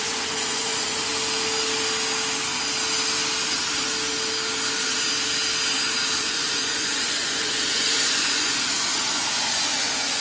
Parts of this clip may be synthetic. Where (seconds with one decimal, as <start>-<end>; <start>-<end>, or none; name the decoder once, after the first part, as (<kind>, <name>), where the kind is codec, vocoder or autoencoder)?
0.0-1.1 (vocoder, Vocos); 6.2-10.2